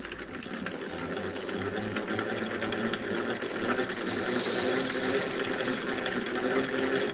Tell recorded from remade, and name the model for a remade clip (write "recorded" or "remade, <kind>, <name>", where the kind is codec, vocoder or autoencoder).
recorded